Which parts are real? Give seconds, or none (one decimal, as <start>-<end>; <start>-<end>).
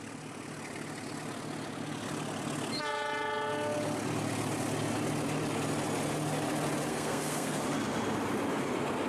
0.0-6.9; 7.6-9.1